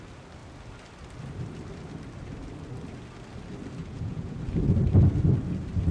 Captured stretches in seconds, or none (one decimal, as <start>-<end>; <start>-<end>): 0.0-3.8; 4.4-5.9